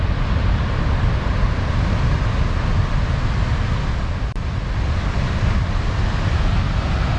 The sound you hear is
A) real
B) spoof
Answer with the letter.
A